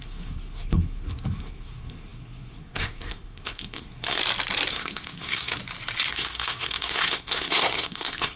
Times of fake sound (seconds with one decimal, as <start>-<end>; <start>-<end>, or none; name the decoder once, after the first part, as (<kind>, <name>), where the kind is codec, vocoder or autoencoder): 0.0-4.2 (codec, SNAC); 4.7-5.6; 6.1-8.4